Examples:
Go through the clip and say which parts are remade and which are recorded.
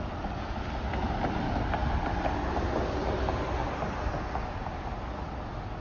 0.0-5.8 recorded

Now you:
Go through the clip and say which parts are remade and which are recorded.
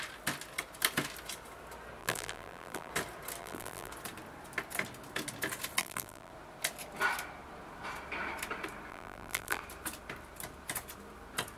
0.0-2.0 recorded; 2.0-2.9 remade; 2.9-3.4 recorded; 3.4-3.9 remade; 3.9-5.8 recorded; 5.8-6.3 remade; 6.3-8.9 recorded; 8.9-9.6 remade; 9.6-11.6 recorded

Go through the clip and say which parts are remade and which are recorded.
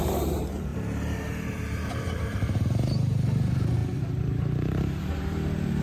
0.0-5.8 remade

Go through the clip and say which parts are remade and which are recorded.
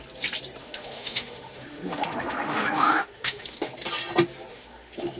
0.0-0.6 recorded; 0.6-3.7 remade; 3.7-4.5 recorded; 4.5-5.2 remade